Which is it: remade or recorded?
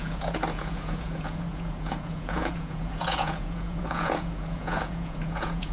remade